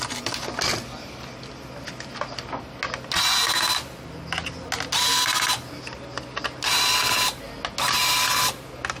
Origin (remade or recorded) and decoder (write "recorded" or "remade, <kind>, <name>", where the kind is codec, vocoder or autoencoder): recorded